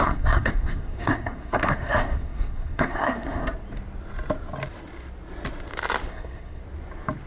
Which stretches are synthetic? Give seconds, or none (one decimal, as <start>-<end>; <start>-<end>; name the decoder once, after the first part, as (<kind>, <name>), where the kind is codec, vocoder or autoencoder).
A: 0.0-3.4 (codec, SNAC); 6.1-6.6